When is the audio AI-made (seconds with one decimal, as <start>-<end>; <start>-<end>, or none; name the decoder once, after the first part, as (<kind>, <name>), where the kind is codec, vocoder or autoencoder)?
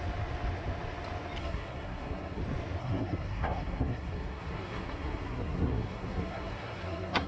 1.4-2.4 (codec, SNAC); 2.8-7.3